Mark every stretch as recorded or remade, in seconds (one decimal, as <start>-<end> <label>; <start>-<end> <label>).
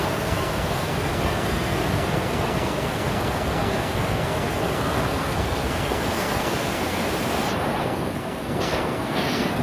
0.0-7.0 remade; 7.0-7.8 recorded; 7.8-9.6 remade